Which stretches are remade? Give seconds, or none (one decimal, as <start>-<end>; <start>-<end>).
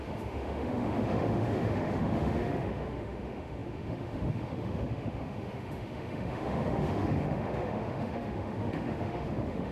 0.0-9.7